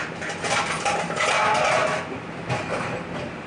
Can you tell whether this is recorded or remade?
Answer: remade